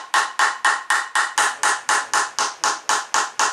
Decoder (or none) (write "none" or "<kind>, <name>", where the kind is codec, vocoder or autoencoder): none